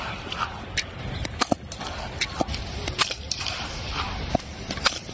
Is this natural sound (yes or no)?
no